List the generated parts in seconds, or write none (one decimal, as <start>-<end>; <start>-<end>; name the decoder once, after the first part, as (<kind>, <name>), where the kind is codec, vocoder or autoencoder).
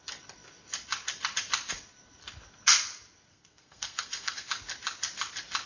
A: 3.3-4.5 (codec, SNAC)